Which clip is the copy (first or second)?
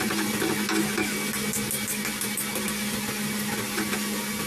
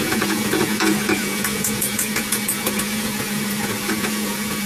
second